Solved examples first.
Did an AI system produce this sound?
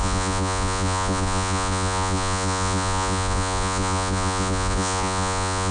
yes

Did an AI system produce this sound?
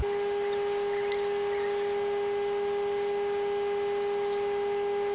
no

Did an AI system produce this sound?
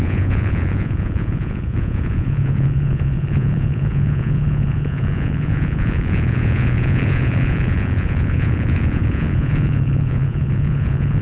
yes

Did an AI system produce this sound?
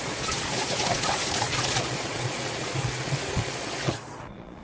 yes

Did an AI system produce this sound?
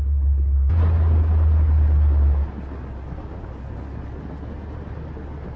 no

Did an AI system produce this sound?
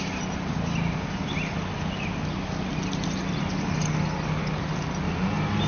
no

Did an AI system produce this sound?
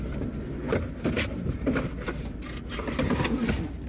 no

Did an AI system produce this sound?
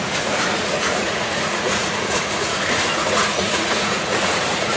yes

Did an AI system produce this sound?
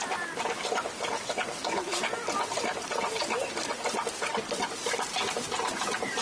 no